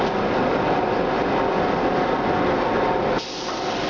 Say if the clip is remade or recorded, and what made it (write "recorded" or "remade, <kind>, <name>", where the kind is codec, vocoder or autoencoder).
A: recorded